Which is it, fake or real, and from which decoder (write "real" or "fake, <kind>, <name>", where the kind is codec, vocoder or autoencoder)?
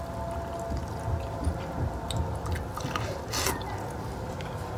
real